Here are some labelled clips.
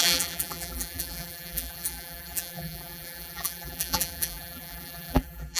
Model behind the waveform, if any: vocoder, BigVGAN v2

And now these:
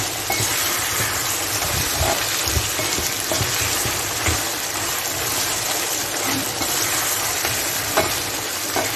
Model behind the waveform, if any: vocoder, BigVGAN v2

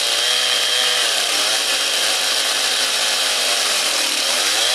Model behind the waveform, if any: vocoder, BigVGAN v2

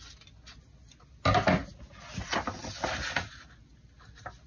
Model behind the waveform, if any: none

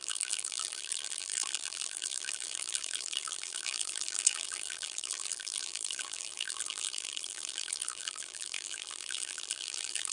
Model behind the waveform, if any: vocoder, BigVGAN v2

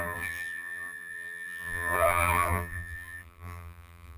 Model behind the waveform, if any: vocoder, BigVGAN v2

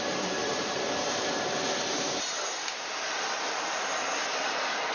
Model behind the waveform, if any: vocoder, BigVGAN v2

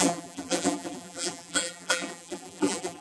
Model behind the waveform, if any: vocoder, BigVGAN v2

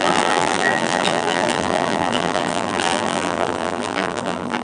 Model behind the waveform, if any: vocoder, BigVGAN v2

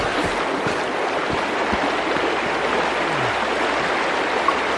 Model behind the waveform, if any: none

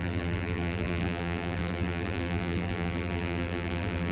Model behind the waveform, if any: vocoder, BigVGAN v2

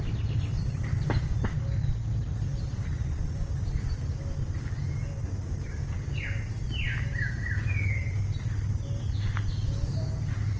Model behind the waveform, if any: vocoder, BigVGAN v2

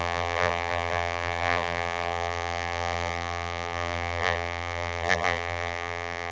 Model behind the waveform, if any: vocoder, BigVGAN v2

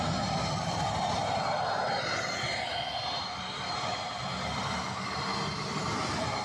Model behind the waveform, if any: none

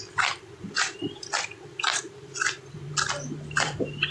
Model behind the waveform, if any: vocoder, BigVGAN v2